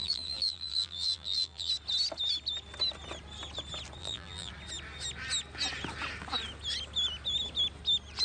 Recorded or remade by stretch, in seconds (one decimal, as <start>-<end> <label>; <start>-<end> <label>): 0.0-1.7 remade; 1.7-4.0 recorded; 4.0-4.5 remade; 4.5-8.2 recorded